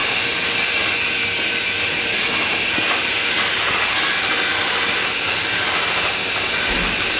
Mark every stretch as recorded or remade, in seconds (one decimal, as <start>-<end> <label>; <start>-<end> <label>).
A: 0.0-7.2 recorded